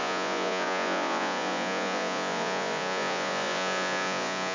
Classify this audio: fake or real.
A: fake